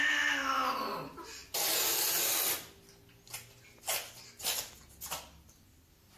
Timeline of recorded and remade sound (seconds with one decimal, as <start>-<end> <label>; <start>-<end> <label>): 0.0-6.2 recorded